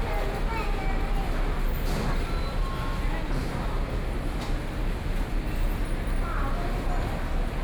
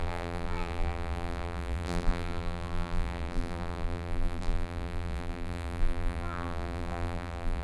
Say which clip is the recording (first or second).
first